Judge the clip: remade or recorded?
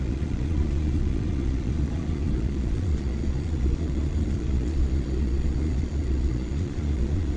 remade